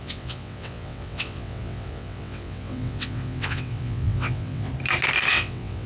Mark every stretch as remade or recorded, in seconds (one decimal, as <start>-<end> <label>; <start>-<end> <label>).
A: 0.0-4.7 remade; 4.7-5.3 recorded; 5.3-5.9 remade